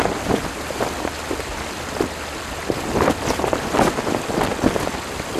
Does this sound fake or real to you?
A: real